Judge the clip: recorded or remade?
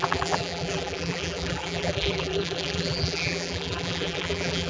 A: remade